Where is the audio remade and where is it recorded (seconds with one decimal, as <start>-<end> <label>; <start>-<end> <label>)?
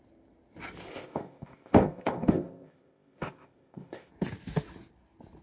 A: 0.0-0.9 recorded; 0.9-4.1 remade; 4.1-5.4 recorded